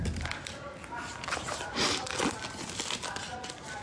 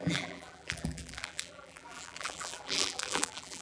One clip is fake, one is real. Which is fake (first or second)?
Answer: second